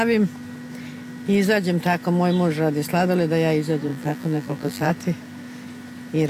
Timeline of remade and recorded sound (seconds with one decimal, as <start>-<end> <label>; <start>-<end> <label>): 0.0-3.9 recorded; 3.9-4.9 remade; 4.9-6.3 recorded